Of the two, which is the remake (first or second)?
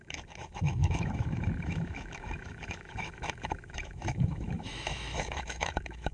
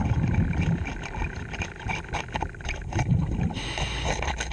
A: first